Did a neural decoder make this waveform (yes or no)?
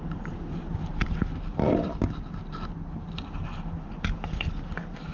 no